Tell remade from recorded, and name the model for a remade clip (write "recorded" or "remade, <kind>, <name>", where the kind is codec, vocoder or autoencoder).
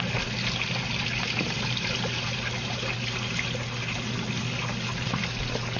recorded